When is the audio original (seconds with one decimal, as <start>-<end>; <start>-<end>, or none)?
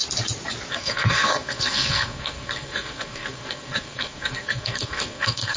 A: 0.0-0.7